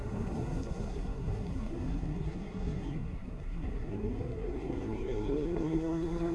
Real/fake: fake